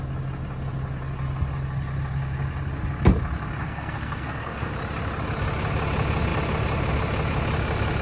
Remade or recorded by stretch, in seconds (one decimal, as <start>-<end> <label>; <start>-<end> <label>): 0.0-3.6 recorded; 3.6-4.7 remade; 4.7-8.0 recorded